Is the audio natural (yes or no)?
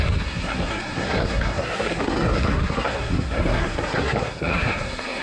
no